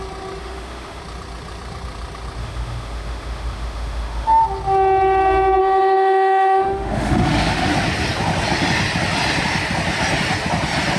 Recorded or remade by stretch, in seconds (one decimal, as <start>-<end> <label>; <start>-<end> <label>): 0.0-0.4 recorded; 0.4-1.0 remade; 1.0-2.4 recorded; 2.4-4.4 remade; 4.4-5.6 recorded; 5.6-7.7 remade; 7.7-11.0 recorded